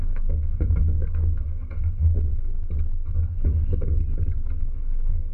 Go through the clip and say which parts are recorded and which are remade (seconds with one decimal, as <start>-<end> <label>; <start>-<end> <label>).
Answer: 0.0-2.3 remade; 2.3-3.1 recorded; 3.1-4.0 remade; 4.0-4.6 recorded; 4.6-5.3 remade